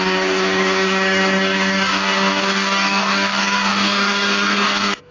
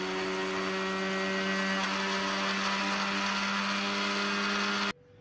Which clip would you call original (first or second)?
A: second